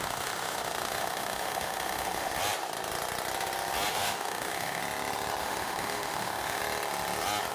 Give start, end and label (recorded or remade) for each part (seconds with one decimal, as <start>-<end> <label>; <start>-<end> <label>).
0.0-2.3 remade; 2.3-3.9 recorded; 3.9-4.8 remade; 4.8-5.4 recorded; 5.4-6.6 remade; 6.6-7.5 recorded